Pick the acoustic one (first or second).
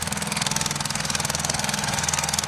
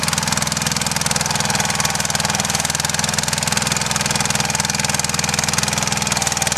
second